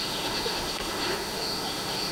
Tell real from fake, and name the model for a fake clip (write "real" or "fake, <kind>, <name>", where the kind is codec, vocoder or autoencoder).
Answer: fake, autoencoder, DAC-VAE